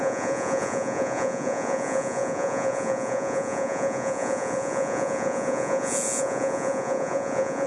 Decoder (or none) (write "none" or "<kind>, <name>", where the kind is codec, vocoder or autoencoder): vocoder, Vocos